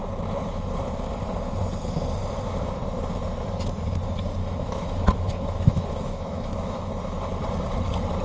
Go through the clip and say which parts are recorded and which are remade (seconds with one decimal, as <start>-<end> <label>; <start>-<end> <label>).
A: 0.0-4.4 recorded; 4.4-6.9 remade; 6.9-8.2 recorded